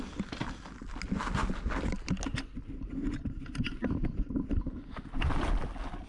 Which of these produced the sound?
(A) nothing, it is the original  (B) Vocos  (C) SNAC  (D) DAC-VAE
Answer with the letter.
A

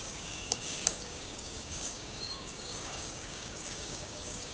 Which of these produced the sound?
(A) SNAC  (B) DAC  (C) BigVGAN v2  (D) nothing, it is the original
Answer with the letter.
B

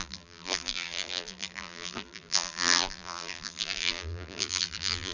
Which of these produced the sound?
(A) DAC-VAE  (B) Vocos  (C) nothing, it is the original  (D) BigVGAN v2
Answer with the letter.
D